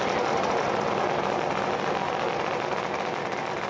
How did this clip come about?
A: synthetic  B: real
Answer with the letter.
B